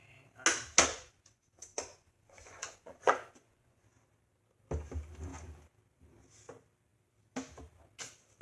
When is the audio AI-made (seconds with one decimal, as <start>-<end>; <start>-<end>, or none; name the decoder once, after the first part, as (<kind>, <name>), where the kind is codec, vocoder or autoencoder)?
0.9-3.8 (vocoder, Vocos)

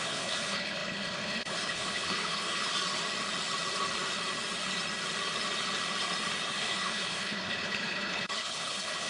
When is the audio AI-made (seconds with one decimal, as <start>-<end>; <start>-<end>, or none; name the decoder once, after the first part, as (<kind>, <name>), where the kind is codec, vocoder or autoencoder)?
0.0-2.7 (codec, HILCodec); 6.6-9.1